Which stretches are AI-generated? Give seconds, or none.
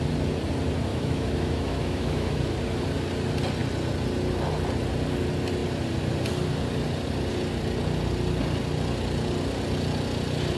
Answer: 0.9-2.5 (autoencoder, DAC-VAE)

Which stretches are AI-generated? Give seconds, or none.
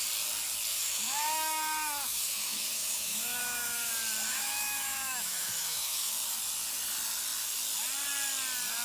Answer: 0.7-3.9 (autoencoder, DAC-VAE); 4.3-6.1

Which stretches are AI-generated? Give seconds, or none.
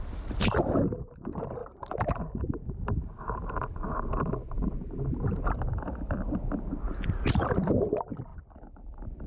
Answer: none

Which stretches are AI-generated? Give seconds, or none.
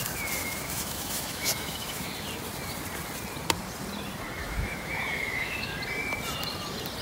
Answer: 0.4-2.1 (autoencoder, DAC-VAE); 4.4-5.7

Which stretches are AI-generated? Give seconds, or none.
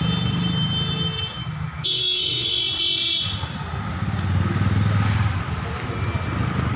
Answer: 1.4-2.6 (autoencoder, DAC-VAE)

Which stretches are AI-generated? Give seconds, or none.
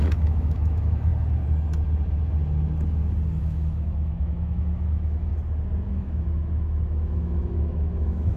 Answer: 0.0-1.1 (autoencoder, DAC-VAE); 3.4-5.3; 5.9-8.4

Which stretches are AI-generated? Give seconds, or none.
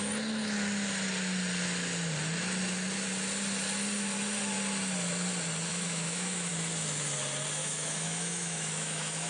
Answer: 5.7-6.5 (autoencoder, DAC-VAE); 7.6-9.3